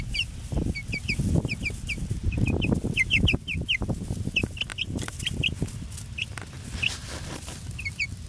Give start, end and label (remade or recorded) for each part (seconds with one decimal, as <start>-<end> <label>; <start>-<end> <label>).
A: 0.0-8.3 recorded